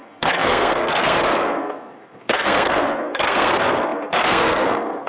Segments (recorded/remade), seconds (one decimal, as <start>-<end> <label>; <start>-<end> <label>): 0.0-5.1 remade